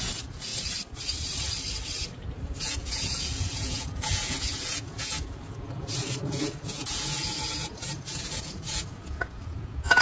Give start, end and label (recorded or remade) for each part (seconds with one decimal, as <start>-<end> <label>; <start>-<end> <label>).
0.0-0.5 remade; 0.5-2.6 recorded; 2.6-10.0 remade